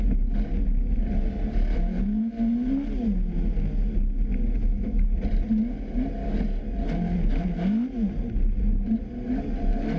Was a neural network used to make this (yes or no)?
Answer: no